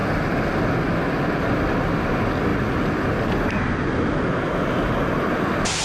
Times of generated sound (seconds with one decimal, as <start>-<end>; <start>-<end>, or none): none